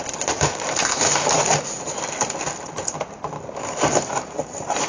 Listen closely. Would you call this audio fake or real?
real